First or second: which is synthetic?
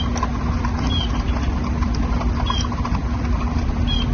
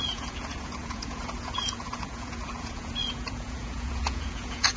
second